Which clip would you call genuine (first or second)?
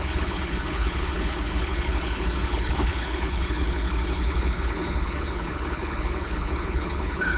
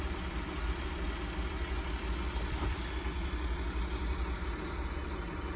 second